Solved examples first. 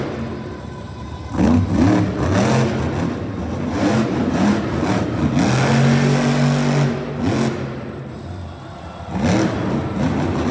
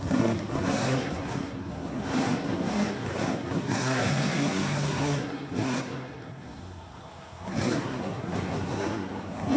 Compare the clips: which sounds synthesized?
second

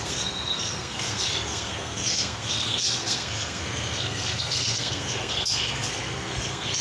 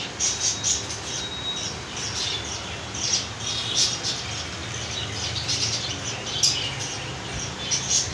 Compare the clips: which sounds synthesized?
first